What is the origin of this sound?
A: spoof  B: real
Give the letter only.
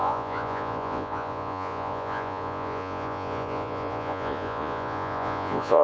A